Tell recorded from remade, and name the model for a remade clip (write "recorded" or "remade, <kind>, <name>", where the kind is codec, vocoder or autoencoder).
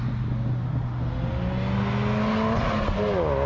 recorded